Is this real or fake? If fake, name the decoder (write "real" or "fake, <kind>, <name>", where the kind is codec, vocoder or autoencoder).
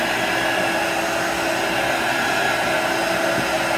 real